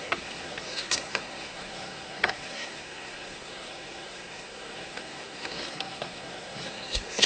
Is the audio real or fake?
fake